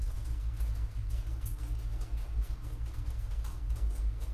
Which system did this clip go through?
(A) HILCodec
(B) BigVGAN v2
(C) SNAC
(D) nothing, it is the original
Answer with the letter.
C